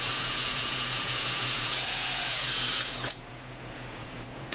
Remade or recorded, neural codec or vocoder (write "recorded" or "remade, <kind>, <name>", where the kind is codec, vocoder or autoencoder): remade, vocoder, Vocos